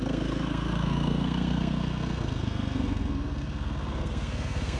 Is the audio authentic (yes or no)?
no